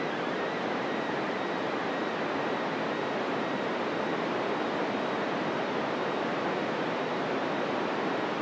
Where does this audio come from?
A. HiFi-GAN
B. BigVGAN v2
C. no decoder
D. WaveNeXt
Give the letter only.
C